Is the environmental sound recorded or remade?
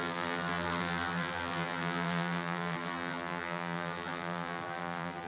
remade